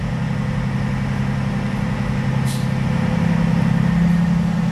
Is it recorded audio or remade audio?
recorded